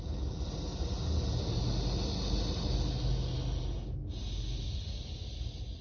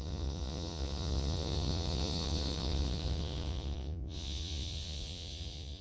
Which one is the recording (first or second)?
first